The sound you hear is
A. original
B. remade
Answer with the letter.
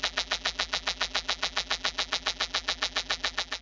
B